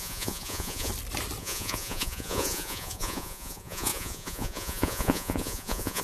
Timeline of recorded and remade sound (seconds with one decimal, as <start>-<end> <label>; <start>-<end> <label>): 0.0-0.9 remade; 0.9-1.4 recorded; 1.4-6.0 remade